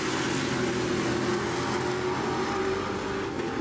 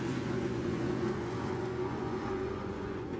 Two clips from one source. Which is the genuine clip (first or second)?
first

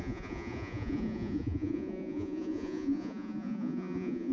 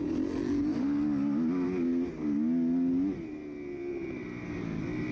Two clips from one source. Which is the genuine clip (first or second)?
second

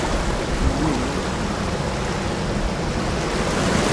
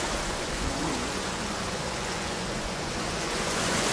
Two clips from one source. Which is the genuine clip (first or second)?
first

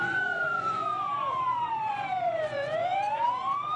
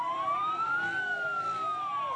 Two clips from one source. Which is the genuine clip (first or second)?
second